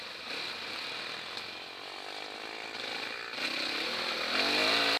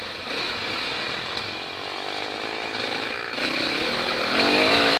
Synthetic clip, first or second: second